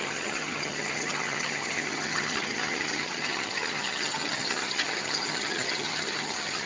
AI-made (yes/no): yes